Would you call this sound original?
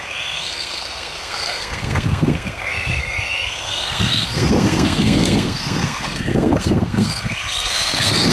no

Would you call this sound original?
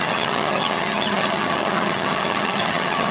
no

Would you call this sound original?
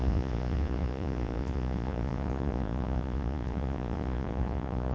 no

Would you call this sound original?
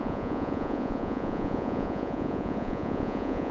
no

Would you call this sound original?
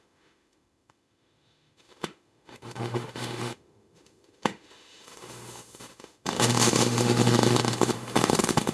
no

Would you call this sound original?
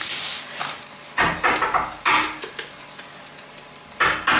yes